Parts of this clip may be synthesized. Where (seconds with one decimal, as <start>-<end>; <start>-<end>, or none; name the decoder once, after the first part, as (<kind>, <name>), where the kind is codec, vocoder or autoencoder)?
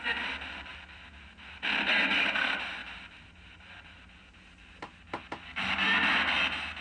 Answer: 2.8-5.7 (vocoder, BigVGAN v2)